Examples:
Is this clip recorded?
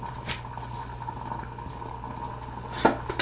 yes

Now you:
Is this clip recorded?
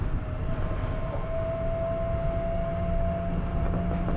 yes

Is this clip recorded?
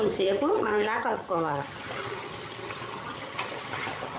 no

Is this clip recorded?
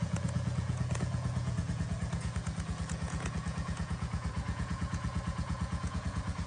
no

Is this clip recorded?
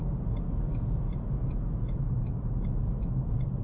yes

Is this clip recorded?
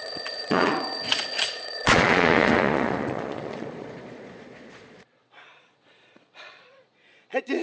no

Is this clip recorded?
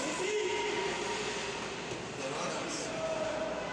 yes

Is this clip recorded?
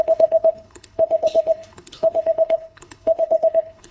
no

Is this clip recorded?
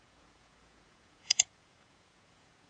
no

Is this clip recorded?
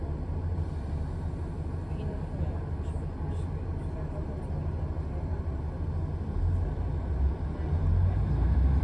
yes